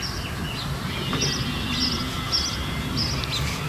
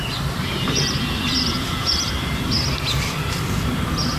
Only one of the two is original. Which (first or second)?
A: first